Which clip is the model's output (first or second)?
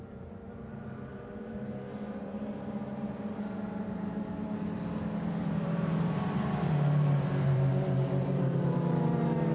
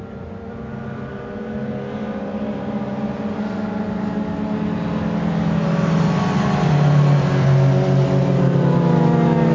first